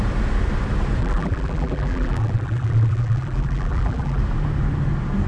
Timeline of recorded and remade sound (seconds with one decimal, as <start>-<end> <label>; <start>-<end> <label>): 0.0-1.0 recorded; 1.0-4.2 remade; 4.2-5.3 recorded